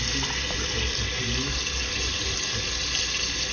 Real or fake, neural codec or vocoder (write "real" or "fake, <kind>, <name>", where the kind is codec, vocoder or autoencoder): real